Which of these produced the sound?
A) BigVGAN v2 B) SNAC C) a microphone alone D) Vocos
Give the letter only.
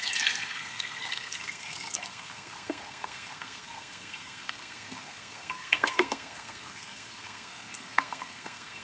B